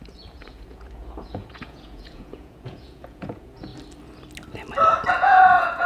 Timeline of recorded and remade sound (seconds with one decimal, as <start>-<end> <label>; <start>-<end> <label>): 0.0-3.7 remade; 3.7-5.1 recorded; 5.1-5.9 remade

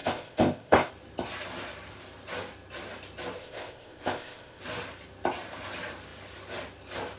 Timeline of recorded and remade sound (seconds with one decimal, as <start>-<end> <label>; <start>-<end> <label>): 0.0-0.9 remade; 0.9-3.4 recorded; 3.4-4.6 remade; 4.6-7.2 recorded

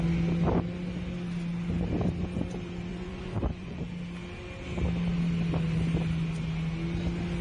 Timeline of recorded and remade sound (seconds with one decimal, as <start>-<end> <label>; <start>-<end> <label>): 0.0-2.9 recorded; 2.9-3.8 remade; 3.8-7.4 recorded

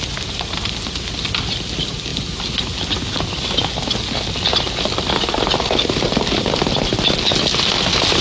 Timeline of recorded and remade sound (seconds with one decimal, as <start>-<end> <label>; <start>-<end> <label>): 0.0-8.2 recorded

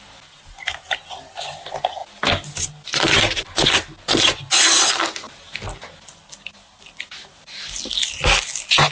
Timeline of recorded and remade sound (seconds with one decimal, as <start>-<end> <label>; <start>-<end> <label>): 0.0-8.9 recorded

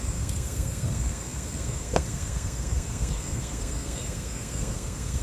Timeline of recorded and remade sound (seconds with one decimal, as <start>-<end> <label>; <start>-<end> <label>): 0.0-5.2 remade